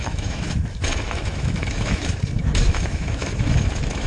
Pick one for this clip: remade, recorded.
remade